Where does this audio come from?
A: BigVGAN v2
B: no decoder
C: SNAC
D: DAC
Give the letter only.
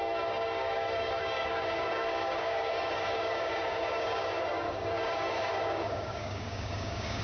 D